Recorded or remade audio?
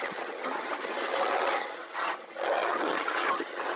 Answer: remade